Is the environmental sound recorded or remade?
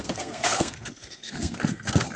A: remade